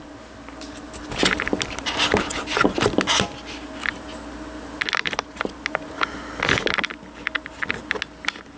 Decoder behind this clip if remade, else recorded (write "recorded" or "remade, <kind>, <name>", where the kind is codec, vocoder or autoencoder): recorded